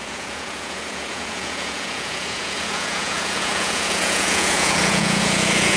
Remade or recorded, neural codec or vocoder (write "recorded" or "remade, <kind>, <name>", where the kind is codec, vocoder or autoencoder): remade, vocoder, Vocos